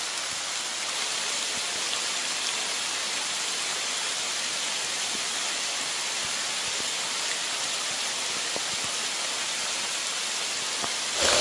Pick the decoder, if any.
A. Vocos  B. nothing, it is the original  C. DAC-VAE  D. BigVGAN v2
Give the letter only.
B